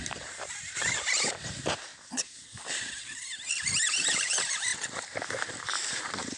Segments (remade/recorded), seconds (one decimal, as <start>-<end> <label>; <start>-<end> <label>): 0.0-1.9 remade; 1.9-3.5 recorded; 3.5-4.7 remade; 4.7-5.5 recorded; 5.5-6.4 remade